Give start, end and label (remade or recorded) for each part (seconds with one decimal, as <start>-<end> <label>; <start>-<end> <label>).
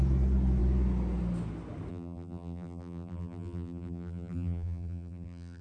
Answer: 0.0-1.9 recorded; 1.9-5.6 remade